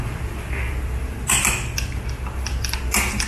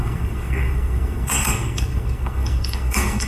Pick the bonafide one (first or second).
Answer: first